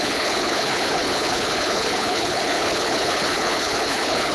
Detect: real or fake fake